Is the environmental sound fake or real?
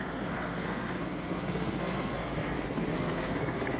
fake